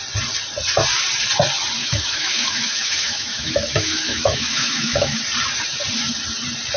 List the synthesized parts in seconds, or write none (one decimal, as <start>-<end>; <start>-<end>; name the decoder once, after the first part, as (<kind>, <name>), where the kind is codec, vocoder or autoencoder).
1.8-5.2 (autoencoder, DAC-VAE)